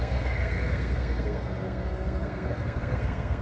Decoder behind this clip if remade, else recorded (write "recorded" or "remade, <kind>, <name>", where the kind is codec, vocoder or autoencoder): remade, codec, SNAC